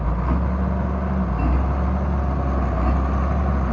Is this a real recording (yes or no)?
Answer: yes